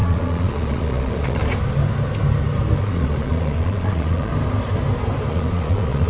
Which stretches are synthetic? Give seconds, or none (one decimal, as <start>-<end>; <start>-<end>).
0.0-1.4; 2.8-4.3; 5.3-6.1